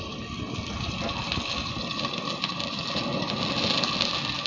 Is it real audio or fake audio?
real